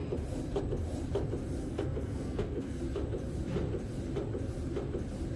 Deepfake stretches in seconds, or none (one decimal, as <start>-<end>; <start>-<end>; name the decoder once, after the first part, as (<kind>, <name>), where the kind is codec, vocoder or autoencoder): 1.6-2.8 (codec, SNAC)